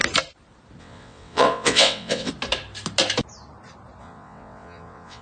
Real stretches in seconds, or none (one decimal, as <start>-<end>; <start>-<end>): 0.0-0.8; 2.3-4.0